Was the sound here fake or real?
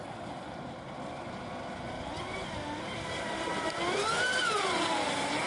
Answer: real